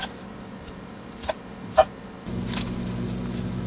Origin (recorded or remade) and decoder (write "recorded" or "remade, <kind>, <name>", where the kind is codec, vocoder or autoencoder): recorded